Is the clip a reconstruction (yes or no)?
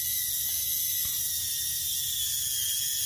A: no